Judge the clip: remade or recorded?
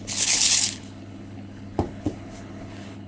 remade